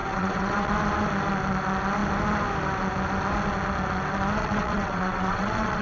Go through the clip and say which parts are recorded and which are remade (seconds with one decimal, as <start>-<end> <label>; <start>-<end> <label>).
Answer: 0.0-0.7 remade; 0.7-4.4 recorded; 4.4-5.8 remade